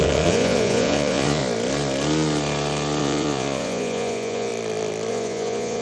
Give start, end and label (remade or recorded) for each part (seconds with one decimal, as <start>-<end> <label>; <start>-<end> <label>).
0.0-1.4 remade; 1.4-3.0 recorded; 3.0-4.5 remade; 4.5-5.1 recorded; 5.1-5.8 remade